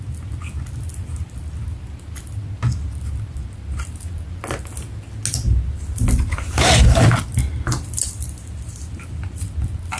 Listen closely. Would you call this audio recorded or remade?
recorded